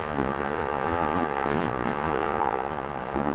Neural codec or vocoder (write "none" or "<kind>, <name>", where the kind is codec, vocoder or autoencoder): vocoder, Vocos